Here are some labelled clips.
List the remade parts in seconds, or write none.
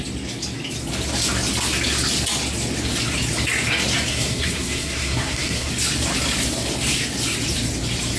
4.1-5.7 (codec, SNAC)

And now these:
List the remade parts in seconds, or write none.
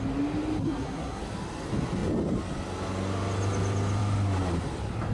0.6-1.2 (codec, SNAC)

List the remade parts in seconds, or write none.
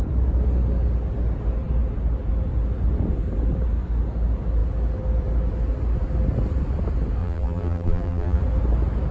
7.2-8.4 (vocoder, BigVGAN v2)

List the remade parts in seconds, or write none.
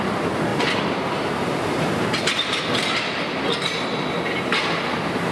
0.5-2.6 (vocoder, BigVGAN v2)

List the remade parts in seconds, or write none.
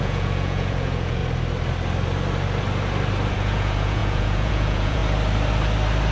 0.0-1.2 (vocoder, Vocos); 3.3-5.0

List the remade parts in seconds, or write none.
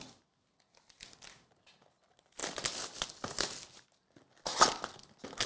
none